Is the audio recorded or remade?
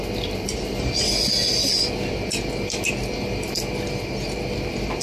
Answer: recorded